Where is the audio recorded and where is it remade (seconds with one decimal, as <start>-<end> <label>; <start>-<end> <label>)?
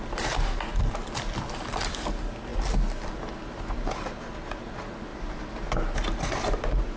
0.0-7.0 recorded